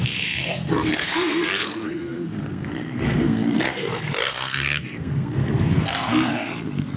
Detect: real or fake fake